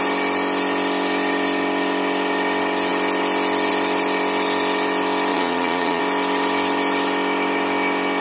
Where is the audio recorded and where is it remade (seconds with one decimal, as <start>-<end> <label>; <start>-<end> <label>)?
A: 0.0-5.3 recorded; 5.3-6.0 remade; 6.0-8.2 recorded